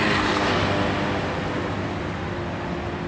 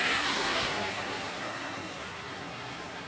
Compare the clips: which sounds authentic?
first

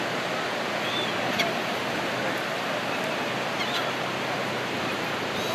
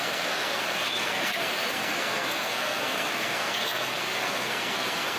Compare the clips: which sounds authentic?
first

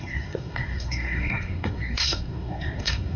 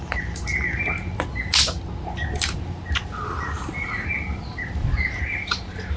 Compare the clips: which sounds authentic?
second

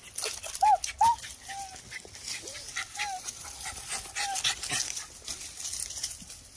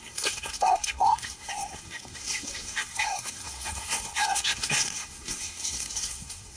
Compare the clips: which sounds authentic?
first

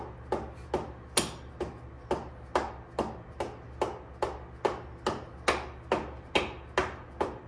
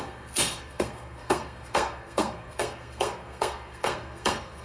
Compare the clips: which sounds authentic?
first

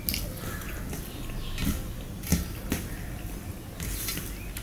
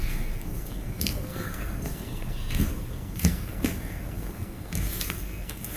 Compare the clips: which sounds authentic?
first